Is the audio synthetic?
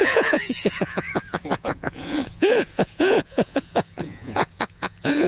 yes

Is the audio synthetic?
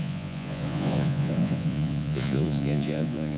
yes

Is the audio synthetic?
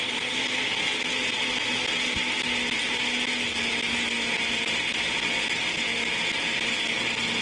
no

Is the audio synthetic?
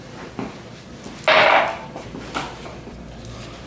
no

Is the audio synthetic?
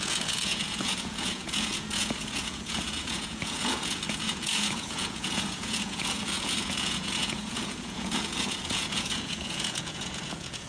yes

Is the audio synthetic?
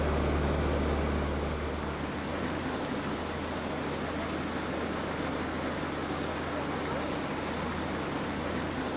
no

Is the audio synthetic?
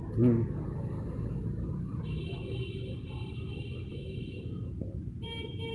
no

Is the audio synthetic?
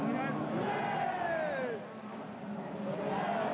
no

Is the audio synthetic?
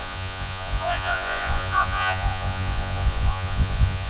yes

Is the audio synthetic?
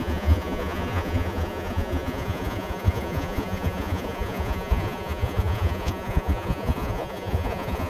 yes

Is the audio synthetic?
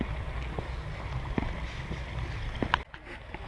no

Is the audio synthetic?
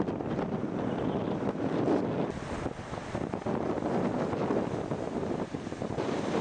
no